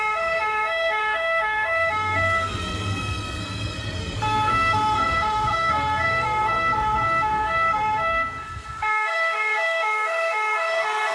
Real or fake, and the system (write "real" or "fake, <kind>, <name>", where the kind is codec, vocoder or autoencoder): fake, codec, SNAC